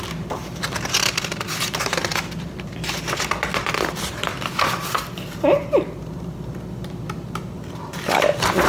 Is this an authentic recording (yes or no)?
no